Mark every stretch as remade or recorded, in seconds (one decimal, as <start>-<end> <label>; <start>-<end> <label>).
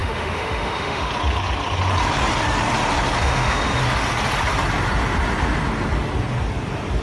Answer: 0.0-1.1 remade; 1.1-3.2 recorded; 3.2-3.8 remade; 3.8-7.0 recorded